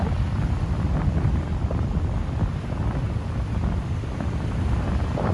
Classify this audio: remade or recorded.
recorded